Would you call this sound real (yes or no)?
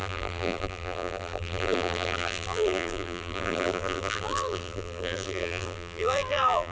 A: no